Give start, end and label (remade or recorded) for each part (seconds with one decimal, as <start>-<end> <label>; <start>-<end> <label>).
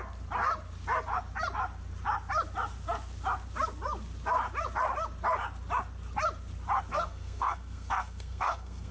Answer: 0.0-6.9 recorded; 6.9-8.9 remade